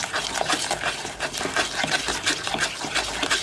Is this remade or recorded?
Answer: recorded